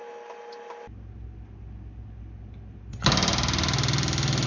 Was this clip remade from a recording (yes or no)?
no